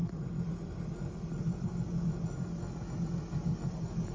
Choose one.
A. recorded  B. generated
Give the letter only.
A